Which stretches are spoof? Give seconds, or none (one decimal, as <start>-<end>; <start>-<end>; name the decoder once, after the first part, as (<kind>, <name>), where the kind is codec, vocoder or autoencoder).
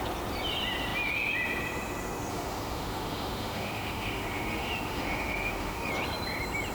2.3-5.9 (autoencoder, DAC-VAE)